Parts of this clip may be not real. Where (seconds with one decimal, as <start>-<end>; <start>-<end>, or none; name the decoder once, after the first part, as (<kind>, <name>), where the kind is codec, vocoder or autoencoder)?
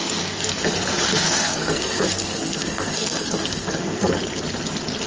0.0-0.6 (codec, SNAC); 1.1-4.2